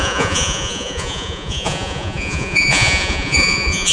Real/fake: fake